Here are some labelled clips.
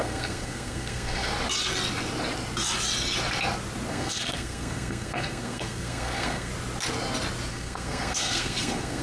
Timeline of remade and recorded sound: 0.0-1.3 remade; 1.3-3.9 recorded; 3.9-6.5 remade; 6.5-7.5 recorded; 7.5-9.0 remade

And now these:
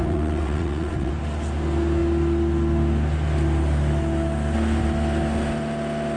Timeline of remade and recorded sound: 0.0-1.1 remade; 1.1-6.2 recorded

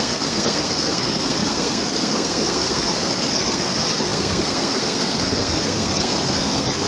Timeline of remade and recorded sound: 0.0-6.9 remade

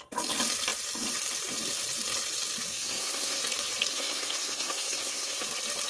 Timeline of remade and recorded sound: 0.0-2.7 recorded; 2.7-3.4 remade; 3.4-3.9 recorded; 3.9-5.4 remade; 5.4-5.9 recorded

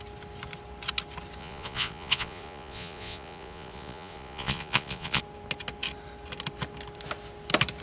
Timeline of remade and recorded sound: 0.0-1.4 recorded; 1.4-5.2 remade; 5.2-7.8 recorded